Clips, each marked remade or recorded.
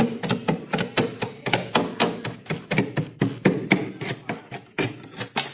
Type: recorded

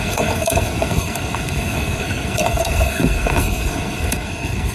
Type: remade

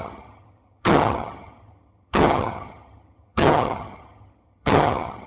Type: remade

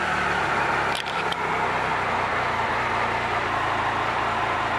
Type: recorded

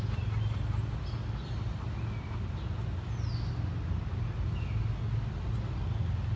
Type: recorded